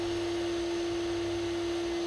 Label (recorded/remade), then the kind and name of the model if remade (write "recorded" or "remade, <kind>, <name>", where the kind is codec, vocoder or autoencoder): recorded